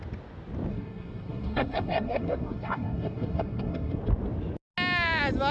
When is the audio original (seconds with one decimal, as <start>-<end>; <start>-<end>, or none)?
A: 0.0-0.7; 4.0-5.5